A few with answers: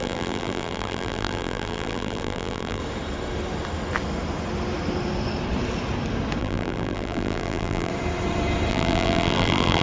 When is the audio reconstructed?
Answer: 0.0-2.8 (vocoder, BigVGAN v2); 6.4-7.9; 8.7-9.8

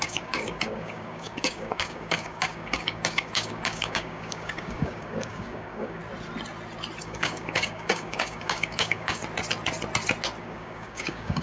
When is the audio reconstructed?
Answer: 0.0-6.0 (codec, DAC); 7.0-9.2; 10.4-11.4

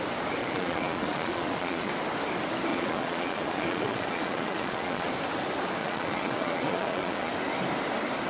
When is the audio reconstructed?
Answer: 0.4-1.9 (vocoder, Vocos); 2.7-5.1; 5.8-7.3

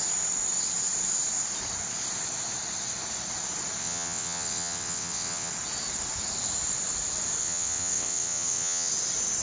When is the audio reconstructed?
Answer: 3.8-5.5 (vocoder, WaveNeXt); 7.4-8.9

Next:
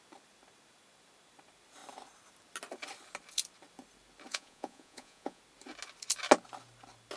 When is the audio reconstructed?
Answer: 4.3-5.4 (vocoder, Vocos)

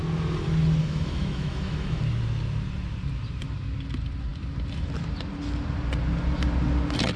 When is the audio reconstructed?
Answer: 0.8-2.0 (autoencoder, DAC-VAE)

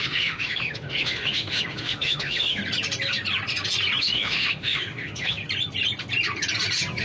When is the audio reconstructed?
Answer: 0.0-2.6 (autoencoder, DAC-VAE); 4.0-5.4

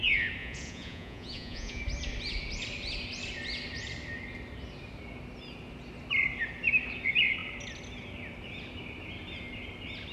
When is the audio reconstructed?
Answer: 0.4-1.8 (vocoder, Vocos)